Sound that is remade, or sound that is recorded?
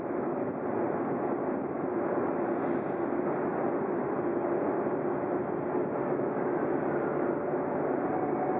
recorded